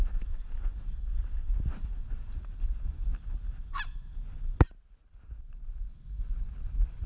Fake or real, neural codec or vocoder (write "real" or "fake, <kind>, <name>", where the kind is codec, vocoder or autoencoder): real